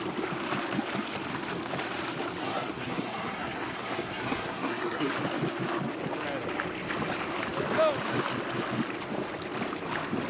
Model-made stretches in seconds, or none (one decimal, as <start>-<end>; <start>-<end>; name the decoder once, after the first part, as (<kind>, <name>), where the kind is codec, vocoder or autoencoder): 2.4-5.1 (codec, SNAC)